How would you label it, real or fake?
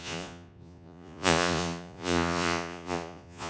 fake